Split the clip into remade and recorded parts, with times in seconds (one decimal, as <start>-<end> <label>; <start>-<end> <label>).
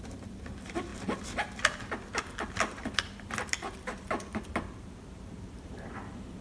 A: 0.0-0.9 remade; 0.9-2.6 recorded; 2.6-6.4 remade